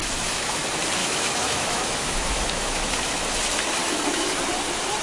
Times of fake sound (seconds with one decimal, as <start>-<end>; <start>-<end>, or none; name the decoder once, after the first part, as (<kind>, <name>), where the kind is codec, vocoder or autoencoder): 0.0-0.6 (autoencoder, DAC-VAE); 1.0-2.9; 3.8-4.3